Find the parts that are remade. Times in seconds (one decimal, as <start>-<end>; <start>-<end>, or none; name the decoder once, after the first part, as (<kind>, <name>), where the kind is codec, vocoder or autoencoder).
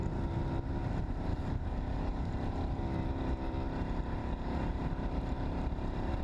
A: 1.3-2.3 (codec, DAC); 4.2-4.8